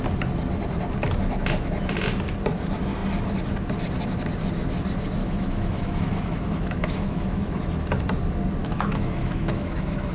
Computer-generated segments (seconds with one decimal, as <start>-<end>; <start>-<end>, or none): 5.2-7.6; 8.6-10.1